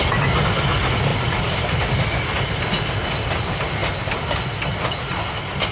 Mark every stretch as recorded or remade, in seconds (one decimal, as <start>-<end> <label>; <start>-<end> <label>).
0.0-5.7 recorded